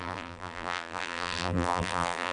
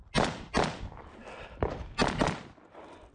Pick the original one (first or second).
second